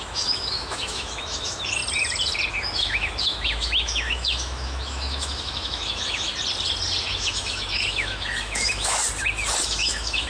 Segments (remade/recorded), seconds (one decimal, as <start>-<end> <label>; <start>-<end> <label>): 0.0-1.8 remade; 1.8-2.5 recorded; 2.5-6.3 remade; 6.3-7.0 recorded; 7.0-9.0 remade; 9.0-9.6 recorded; 9.6-10.3 remade